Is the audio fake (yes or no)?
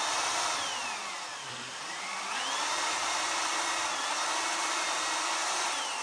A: no